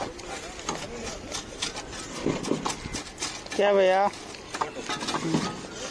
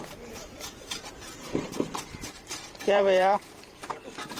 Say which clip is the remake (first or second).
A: second